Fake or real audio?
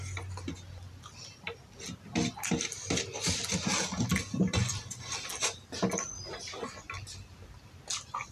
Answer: real